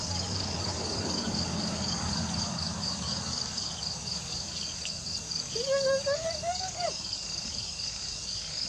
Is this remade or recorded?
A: remade